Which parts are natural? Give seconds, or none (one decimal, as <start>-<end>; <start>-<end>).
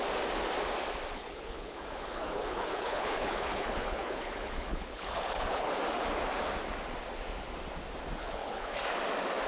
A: 0.0-1.1; 5.7-8.2; 8.8-9.5